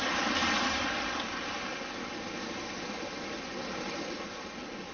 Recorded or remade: recorded